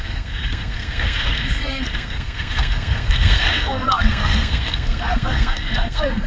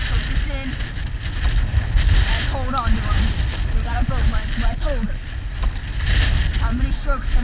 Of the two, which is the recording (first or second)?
second